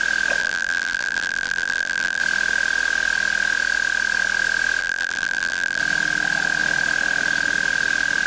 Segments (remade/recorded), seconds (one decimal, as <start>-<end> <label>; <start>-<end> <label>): 0.0-0.4 recorded; 0.4-2.2 remade; 2.2-4.8 recorded; 4.8-5.8 remade; 5.8-8.3 recorded